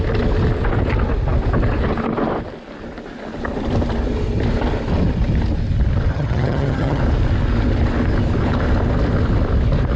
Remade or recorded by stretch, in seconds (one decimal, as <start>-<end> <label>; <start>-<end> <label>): 0.0-6.1 recorded; 6.1-7.0 remade; 7.0-10.0 recorded